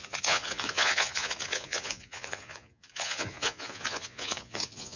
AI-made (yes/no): yes